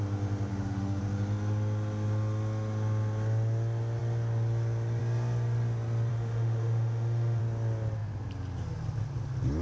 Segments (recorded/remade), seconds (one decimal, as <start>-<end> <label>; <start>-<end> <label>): 0.0-0.5 recorded; 0.5-1.0 remade; 1.0-6.1 recorded; 6.1-7.4 remade; 7.4-9.6 recorded